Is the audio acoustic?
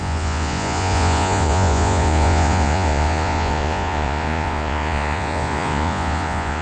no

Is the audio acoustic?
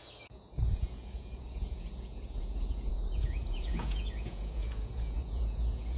no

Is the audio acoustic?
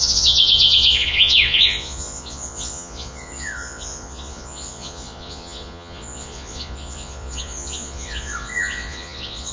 no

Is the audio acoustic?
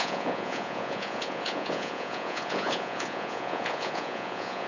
no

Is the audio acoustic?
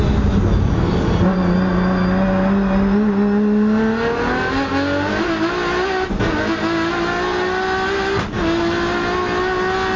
yes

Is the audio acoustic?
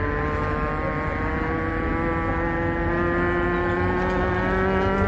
yes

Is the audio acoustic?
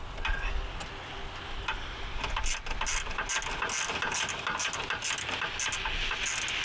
yes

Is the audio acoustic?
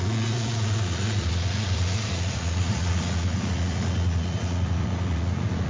no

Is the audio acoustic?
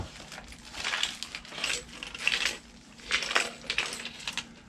yes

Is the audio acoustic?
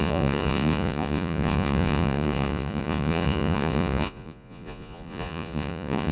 no